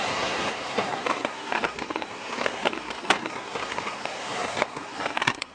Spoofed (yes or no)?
yes